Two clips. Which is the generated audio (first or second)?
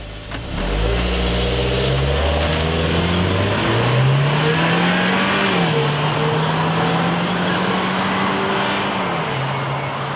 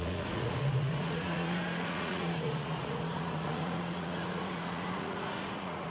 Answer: second